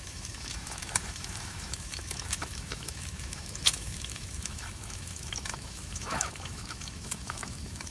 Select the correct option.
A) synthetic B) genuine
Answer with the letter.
A